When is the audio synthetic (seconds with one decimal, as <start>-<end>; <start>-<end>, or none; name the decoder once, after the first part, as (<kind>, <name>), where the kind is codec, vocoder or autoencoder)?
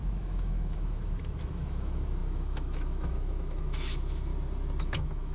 0.0-4.3 (autoencoder, DAC-VAE); 4.8-5.3